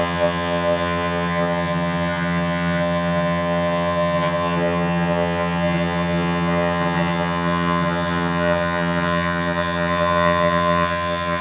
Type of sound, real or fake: fake